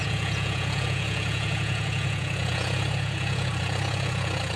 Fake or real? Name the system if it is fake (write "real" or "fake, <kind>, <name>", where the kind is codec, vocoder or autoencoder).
fake, vocoder, Vocos